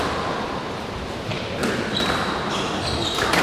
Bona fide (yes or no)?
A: no